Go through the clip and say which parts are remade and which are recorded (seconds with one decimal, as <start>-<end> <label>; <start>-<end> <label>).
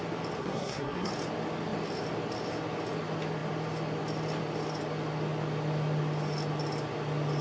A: 0.0-0.4 recorded; 0.4-1.1 remade; 1.1-7.4 recorded